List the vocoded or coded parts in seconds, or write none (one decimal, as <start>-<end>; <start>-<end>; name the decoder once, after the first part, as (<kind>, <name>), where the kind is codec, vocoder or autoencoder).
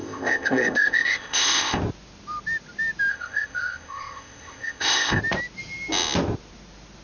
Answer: 0.0-1.8 (codec, ZipCodec); 3.1-5.2